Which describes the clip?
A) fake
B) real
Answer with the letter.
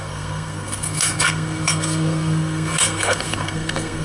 A